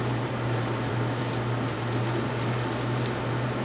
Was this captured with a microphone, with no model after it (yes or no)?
no